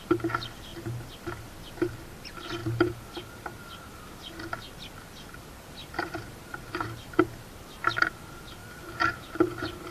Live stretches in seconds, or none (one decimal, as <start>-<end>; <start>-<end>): 0.0-0.7; 1.7-5.8; 7.2-8.6